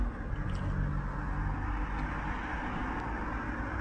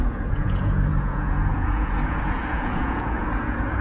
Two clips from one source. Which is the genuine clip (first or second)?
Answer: first